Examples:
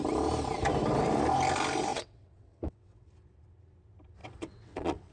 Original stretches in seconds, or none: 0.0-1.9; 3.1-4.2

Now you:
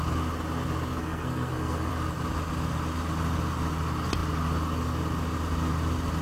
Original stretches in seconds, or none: 0.0-1.0; 1.9-6.2

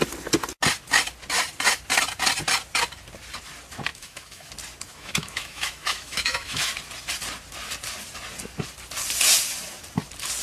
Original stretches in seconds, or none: 0.0-3.9; 4.5-4.9; 6.7-10.4

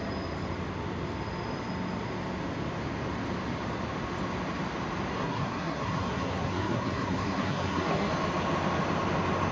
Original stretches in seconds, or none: 0.0-5.1; 8.1-9.5